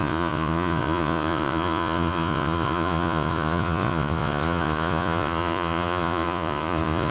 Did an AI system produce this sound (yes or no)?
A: yes